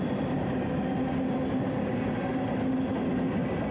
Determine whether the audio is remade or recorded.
recorded